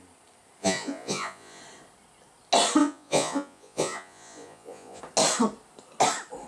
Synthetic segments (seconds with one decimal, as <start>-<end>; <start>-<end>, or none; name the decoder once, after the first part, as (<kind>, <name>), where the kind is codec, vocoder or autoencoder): 0.6-1.6 (vocoder, Vocos); 2.8-5.0